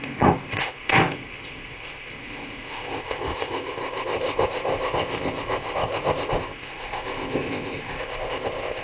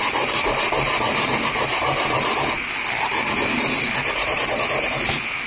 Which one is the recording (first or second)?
second